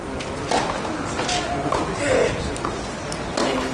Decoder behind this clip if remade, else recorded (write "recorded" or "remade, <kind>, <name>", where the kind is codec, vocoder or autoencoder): recorded